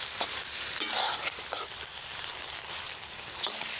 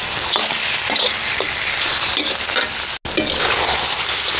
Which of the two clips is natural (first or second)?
second